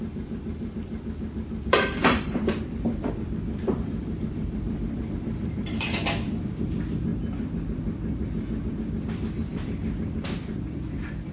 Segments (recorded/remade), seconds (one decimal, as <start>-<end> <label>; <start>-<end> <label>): 0.0-7.1 remade; 7.1-8.7 recorded; 8.7-11.3 remade